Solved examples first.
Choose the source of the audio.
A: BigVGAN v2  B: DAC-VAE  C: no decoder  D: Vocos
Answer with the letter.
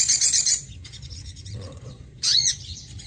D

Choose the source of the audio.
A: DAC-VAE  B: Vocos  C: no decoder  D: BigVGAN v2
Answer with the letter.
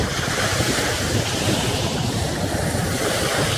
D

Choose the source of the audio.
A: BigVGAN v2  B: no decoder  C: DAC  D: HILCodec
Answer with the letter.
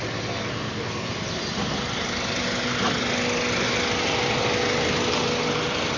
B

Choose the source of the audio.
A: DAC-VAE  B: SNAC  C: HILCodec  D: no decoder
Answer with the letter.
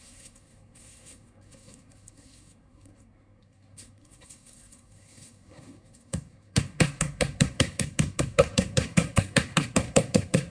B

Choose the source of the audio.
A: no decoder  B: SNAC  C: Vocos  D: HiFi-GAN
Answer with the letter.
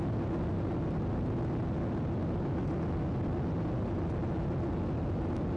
A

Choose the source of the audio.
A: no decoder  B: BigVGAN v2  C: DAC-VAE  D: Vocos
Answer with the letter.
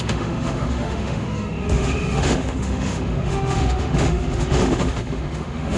C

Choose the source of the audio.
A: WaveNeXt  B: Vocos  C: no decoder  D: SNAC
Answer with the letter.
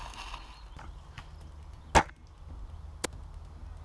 C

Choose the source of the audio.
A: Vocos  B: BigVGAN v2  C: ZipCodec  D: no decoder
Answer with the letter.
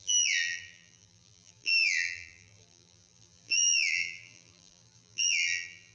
B